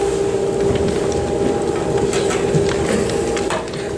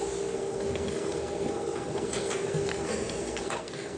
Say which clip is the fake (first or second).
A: second